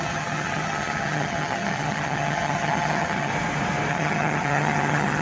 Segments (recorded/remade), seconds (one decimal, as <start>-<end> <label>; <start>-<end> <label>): 0.0-3.3 remade; 3.3-3.9 recorded; 3.9-5.2 remade